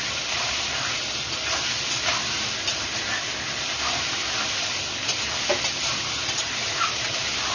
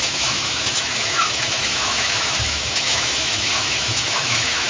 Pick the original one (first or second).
first